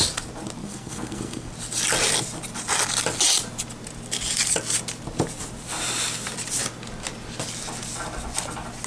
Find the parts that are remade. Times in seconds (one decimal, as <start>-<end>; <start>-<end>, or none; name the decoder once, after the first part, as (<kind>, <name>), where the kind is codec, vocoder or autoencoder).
0.6-1.5 (codec, SNAC)